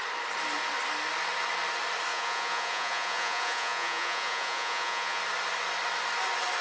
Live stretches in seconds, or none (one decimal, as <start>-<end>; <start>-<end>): 0.0-2.1; 5.2-6.6